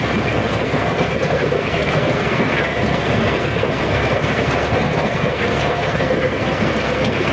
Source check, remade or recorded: remade